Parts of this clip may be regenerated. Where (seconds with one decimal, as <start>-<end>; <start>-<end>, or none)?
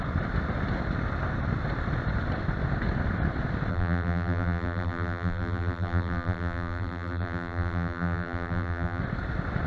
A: 3.7-9.0